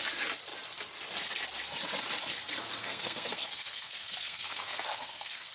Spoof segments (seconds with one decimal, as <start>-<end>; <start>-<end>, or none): 2.8-5.5